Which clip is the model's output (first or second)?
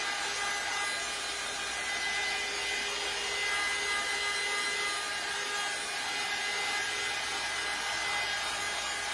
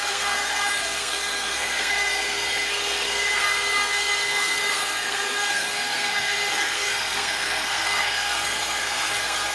second